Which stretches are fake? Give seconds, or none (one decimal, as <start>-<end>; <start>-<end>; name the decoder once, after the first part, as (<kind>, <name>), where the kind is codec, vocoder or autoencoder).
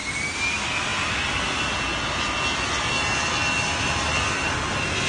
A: none